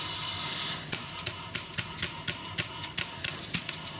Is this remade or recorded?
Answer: remade